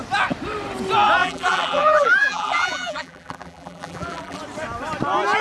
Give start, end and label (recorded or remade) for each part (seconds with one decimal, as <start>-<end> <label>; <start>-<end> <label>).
0.0-1.2 recorded; 1.2-4.4 remade; 4.4-5.4 recorded